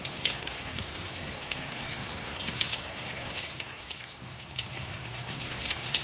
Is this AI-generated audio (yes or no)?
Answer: yes